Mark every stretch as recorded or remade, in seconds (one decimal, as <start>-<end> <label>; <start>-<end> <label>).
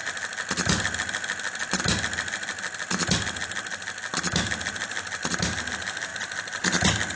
0.0-7.2 recorded